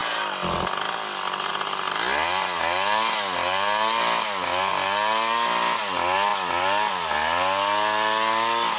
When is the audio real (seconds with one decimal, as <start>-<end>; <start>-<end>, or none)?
0.0-8.8